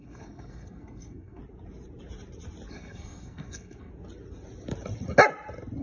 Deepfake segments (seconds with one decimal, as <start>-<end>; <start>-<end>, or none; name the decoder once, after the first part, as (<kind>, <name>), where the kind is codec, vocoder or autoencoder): 0.0-1.4 (codec, SNAC); 2.7-3.9